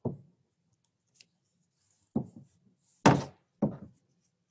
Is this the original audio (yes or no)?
yes